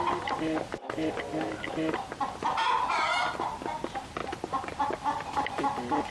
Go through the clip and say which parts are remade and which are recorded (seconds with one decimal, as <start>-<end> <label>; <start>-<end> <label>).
0.0-4.2 recorded; 4.2-6.1 remade